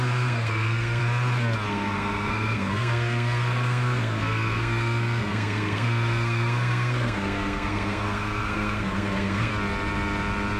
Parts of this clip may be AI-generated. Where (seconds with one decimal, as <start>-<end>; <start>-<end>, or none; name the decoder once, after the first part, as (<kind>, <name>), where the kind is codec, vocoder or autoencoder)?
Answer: 0.0-1.0 (codec, SNAC); 1.7-9.5